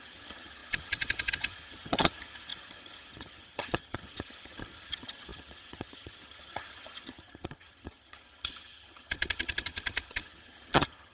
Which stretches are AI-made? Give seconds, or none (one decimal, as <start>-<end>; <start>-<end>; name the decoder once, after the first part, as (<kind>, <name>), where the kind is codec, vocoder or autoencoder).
0.0-11.1 (vocoder, HiFi-GAN)